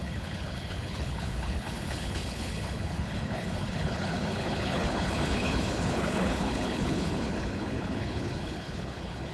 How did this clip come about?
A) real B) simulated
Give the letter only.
B